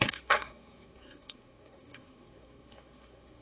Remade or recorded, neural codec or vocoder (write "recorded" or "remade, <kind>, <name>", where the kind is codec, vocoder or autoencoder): remade, codec, SNAC